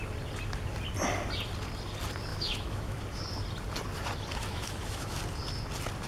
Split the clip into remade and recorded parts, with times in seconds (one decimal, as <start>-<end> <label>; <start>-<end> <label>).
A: 0.0-2.3 recorded; 2.3-3.0 remade; 3.0-4.4 recorded; 4.4-5.2 remade; 5.2-6.1 recorded